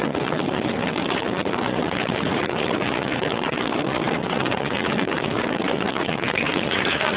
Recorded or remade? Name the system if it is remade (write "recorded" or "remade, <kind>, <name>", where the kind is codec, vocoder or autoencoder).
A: remade, vocoder, Vocos